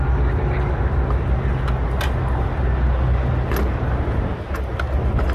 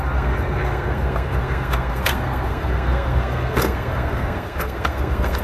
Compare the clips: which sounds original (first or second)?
first